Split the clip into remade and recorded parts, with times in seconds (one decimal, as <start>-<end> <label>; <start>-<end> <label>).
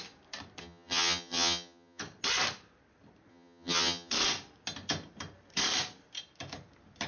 0.0-0.6 recorded; 0.6-2.0 remade; 2.0-3.3 recorded; 3.3-4.1 remade; 4.1-7.1 recorded